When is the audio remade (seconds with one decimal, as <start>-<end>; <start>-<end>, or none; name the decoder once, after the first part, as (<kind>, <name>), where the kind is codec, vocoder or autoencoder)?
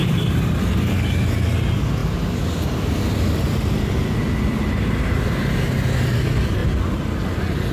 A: 0.0-0.6 (vocoder, BigVGAN v2)